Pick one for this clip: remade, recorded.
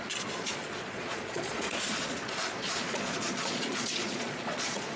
remade